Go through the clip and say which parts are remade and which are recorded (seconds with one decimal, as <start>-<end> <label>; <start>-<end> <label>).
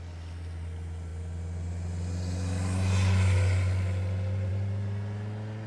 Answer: 0.0-5.7 recorded